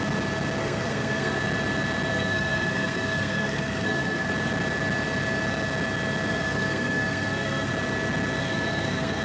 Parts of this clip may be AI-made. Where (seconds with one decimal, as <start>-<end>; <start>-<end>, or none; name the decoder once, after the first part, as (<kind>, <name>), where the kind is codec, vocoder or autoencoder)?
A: 0.6-1.4 (codec, SNAC); 2.1-4.3; 6.3-7.7; 8.4-9.2